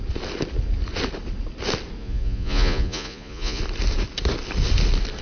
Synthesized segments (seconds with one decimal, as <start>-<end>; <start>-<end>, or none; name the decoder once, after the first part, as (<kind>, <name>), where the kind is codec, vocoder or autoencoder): 2.0-3.6 (vocoder, Vocos)